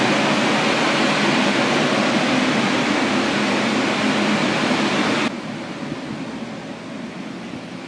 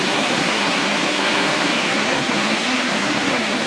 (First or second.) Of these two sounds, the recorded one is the first